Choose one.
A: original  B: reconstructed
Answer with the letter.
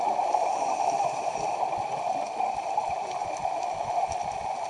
A